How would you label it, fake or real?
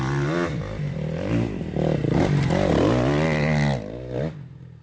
real